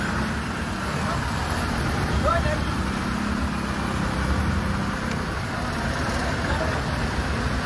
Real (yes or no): yes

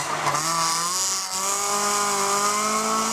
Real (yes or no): yes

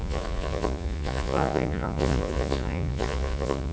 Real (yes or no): no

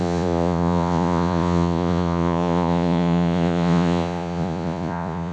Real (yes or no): no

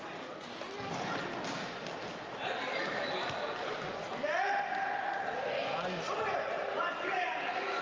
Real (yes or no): yes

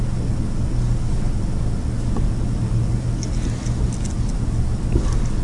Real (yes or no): yes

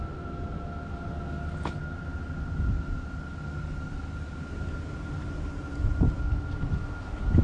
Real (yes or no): yes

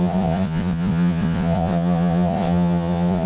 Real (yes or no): no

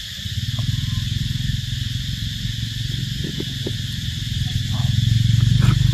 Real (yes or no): yes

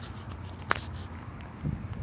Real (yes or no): yes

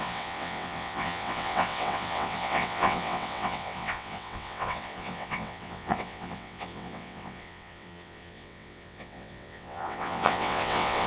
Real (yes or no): no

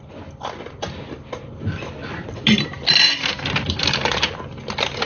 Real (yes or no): yes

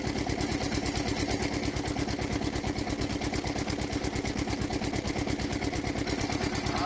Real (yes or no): yes